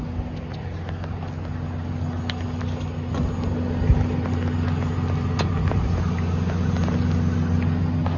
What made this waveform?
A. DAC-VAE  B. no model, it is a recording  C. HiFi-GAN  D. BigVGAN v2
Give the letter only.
B